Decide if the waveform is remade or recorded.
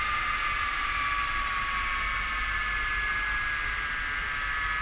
recorded